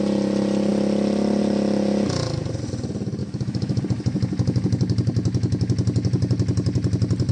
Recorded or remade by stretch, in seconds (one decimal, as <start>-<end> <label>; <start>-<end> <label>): 0.0-3.2 recorded; 3.2-3.8 remade; 3.8-7.3 recorded